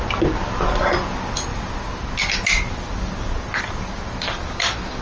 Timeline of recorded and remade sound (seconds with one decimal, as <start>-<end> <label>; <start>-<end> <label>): 0.0-5.0 recorded